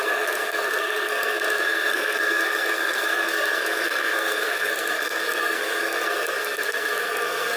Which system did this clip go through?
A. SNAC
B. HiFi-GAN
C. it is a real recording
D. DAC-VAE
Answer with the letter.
A